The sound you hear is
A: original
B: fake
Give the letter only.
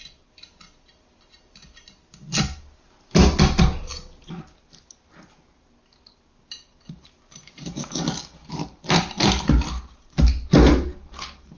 A